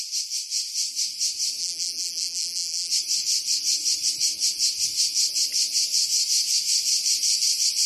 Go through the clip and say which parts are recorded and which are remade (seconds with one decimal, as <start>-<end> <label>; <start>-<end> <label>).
0.0-1.6 recorded; 1.6-2.9 remade; 2.9-7.9 recorded